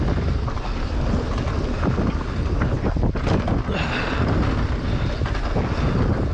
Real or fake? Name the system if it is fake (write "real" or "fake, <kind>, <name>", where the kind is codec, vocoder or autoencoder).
real